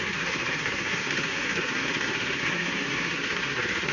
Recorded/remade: remade